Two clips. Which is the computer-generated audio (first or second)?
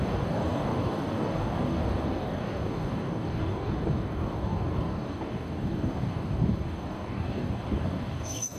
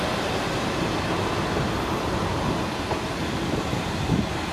first